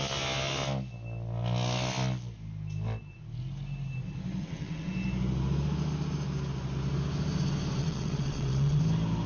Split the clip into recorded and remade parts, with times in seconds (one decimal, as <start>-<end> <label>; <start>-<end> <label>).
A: 0.0-4.4 recorded; 4.4-4.9 remade; 4.9-7.8 recorded; 7.8-8.8 remade; 8.8-9.3 recorded